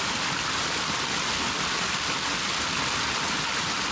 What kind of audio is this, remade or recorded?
recorded